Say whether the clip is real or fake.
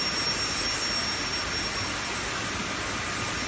real